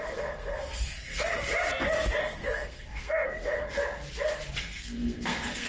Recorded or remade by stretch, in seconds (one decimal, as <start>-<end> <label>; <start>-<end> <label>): 0.0-1.5 remade; 1.5-2.2 recorded; 2.2-3.8 remade; 3.8-4.6 recorded; 4.6-5.7 remade